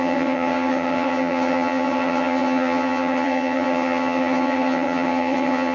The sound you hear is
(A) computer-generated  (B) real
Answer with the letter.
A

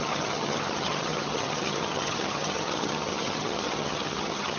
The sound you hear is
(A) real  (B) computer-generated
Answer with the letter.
B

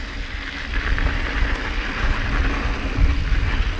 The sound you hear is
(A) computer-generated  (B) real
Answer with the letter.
B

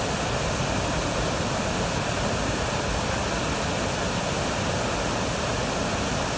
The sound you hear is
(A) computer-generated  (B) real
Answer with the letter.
B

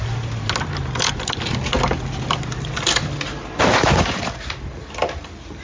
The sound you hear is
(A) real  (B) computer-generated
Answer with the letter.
A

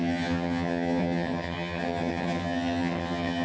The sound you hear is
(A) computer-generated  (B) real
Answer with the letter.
A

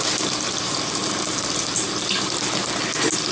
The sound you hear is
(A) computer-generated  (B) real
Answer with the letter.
B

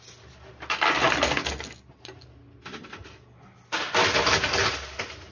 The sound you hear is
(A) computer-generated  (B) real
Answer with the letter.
B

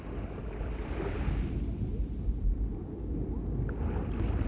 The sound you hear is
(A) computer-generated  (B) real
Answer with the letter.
B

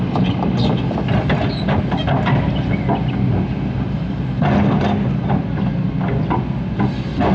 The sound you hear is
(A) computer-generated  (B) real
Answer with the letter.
B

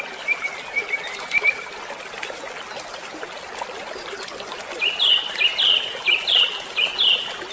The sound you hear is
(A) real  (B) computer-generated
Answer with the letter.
A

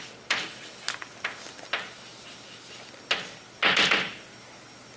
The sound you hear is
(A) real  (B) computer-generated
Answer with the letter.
A